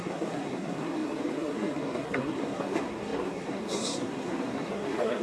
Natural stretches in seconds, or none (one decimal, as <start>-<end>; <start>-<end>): none